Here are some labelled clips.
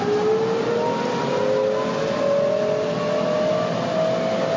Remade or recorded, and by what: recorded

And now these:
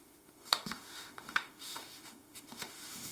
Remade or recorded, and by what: remade, autoencoder, DAC-VAE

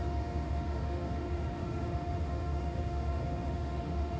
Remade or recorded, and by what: remade, autoencoder, DAC-VAE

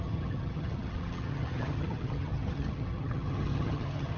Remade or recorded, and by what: remade, vocoder, HiFi-GAN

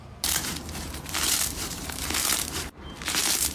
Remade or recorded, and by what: remade, vocoder, BigVGAN v2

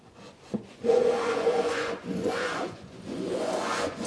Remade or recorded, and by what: remade, vocoder, Vocos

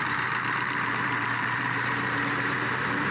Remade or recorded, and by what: remade, vocoder, BigVGAN v2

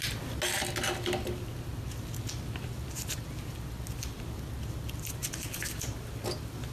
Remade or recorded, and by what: recorded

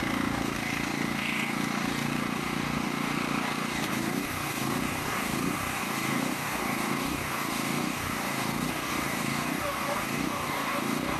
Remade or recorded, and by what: remade, codec, DAC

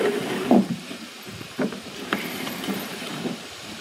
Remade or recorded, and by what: remade, vocoder, BigVGAN v2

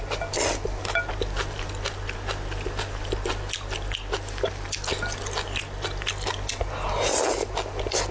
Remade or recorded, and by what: recorded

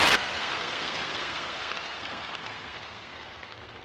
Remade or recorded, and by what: remade, codec, SNAC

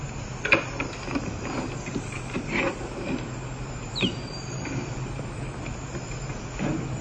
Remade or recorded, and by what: recorded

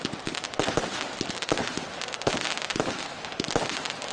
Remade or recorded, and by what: recorded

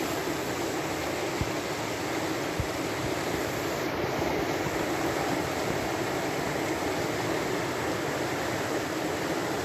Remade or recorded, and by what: recorded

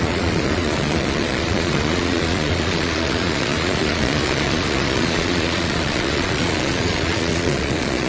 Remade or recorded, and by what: remade, vocoder, Vocos